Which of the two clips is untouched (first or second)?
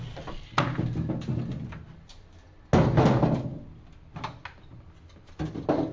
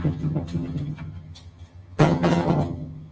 first